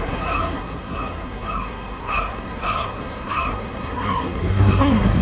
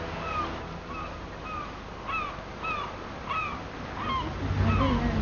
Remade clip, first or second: first